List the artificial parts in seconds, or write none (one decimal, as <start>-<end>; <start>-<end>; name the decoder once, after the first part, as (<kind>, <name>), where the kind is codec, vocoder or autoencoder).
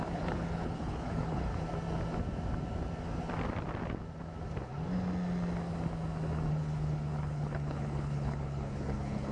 0.0-1.5 (codec, HILCodec); 6.5-9.3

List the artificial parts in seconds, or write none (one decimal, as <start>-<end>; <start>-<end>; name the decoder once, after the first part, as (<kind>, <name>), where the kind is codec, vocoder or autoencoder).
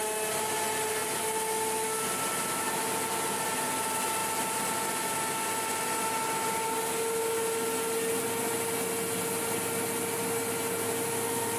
none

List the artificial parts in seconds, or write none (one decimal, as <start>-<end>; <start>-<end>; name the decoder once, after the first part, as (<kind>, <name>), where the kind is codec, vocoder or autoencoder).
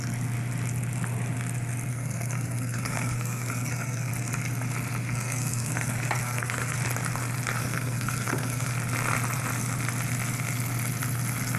1.9-4.1 (codec, SNAC); 5.0-6.8; 7.6-8.7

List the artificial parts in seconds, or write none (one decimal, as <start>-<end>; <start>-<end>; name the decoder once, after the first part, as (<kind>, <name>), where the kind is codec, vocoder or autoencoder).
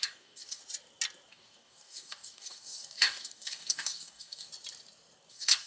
0.0-0.6 (codec, DAC); 1.3-4.5; 5.3-5.7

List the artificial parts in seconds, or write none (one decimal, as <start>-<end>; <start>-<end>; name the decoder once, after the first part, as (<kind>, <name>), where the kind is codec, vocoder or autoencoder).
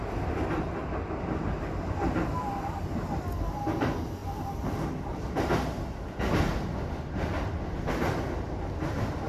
none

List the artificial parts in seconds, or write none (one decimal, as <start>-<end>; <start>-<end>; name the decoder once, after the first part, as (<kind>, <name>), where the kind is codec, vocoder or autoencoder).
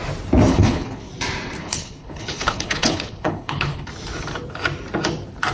0.5-1.1 (codec, HILCodec); 1.6-3.9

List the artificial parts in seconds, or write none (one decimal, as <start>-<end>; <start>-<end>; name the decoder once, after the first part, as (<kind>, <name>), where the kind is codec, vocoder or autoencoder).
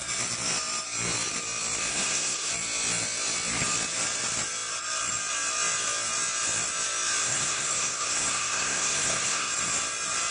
1.9-2.5 (codec, SNAC); 7.2-9.5